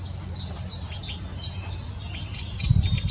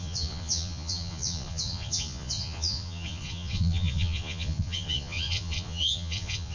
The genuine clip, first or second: first